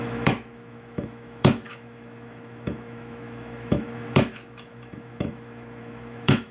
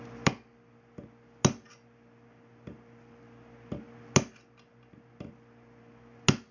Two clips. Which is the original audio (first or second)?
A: second